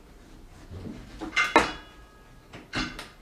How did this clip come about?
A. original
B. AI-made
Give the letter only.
A